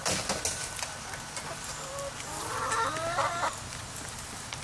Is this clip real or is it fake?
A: real